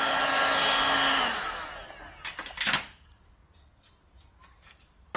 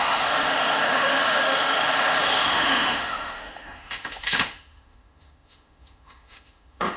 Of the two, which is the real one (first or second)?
first